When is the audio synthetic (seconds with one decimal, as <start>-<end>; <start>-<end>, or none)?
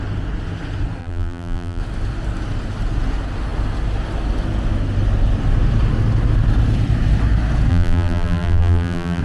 1.0-1.8; 7.7-9.2